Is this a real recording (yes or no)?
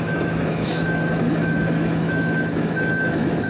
no